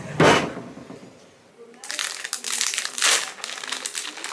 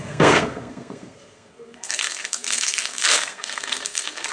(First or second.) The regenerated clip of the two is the second